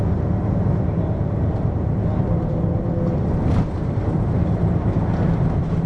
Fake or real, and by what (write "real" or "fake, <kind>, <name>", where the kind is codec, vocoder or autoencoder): real